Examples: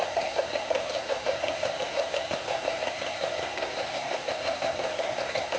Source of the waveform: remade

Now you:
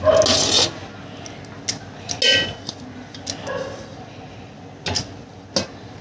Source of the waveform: recorded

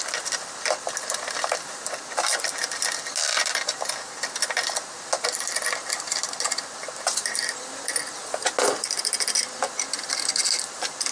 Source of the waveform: recorded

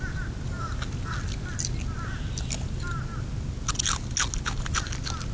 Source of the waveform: recorded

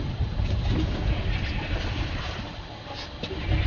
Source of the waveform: recorded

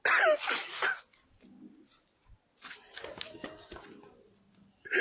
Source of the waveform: recorded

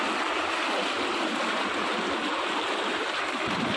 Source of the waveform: recorded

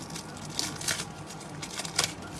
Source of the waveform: recorded